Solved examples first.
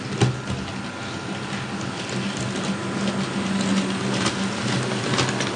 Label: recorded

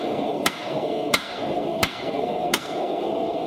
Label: remade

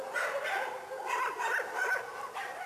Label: recorded